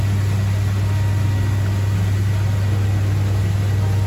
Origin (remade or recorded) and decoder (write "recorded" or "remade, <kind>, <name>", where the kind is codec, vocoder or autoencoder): recorded